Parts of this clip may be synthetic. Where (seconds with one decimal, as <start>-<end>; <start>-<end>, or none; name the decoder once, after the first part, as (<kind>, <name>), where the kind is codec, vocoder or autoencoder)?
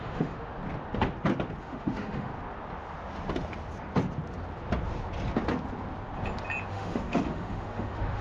0.0-0.5 (autoencoder, DAC-VAE); 1.6-2.3; 6.7-8.2